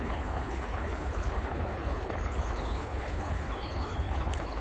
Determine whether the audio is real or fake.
fake